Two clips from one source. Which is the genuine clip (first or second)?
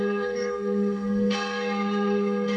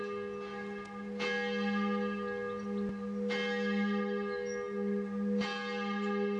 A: second